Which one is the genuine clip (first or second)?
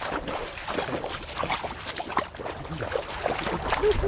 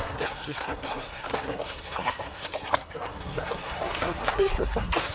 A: first